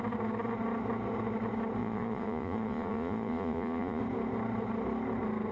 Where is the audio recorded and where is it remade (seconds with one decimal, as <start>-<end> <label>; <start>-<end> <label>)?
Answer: 0.0-1.8 recorded; 1.8-4.0 remade; 4.0-5.5 recorded